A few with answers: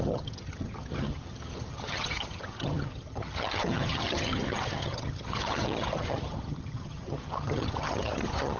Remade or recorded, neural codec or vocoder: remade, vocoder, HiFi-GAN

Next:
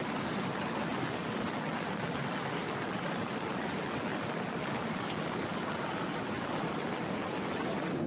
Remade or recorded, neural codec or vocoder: recorded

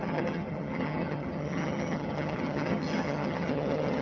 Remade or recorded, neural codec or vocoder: remade, vocoder, HiFi-GAN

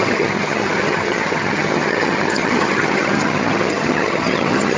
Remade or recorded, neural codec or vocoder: remade, vocoder, HiFi-GAN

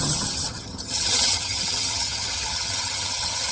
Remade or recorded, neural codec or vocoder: remade, vocoder, HiFi-GAN